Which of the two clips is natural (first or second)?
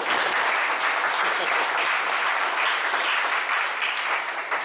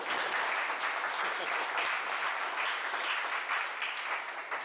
second